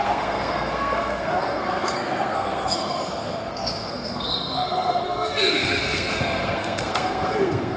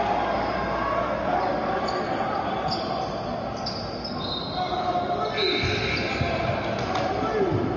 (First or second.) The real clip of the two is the second